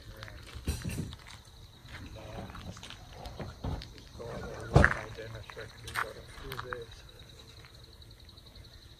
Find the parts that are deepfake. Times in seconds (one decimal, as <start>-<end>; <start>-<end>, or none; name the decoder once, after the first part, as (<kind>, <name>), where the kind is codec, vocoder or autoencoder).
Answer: 4.1-4.8 (vocoder, BigVGAN v2)